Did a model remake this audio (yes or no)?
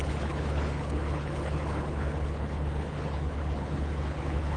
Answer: yes